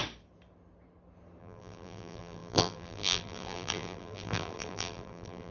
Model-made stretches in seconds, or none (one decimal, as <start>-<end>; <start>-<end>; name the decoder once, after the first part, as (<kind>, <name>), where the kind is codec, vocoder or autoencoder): 1.4-5.5 (vocoder, BigVGAN v2)